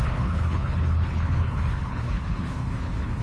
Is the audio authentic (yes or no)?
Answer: no